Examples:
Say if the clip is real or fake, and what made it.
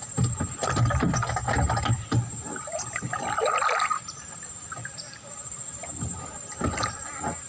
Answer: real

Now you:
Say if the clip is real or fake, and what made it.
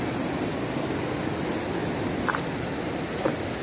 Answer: real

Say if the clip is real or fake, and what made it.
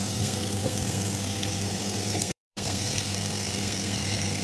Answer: fake, codec, SNAC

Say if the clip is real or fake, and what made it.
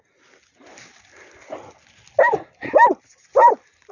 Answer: real